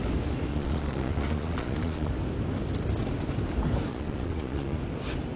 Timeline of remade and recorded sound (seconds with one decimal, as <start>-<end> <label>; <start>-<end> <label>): 0.0-0.5 recorded; 0.5-2.1 remade; 2.1-3.9 recorded; 3.9-4.8 remade; 4.8-5.4 recorded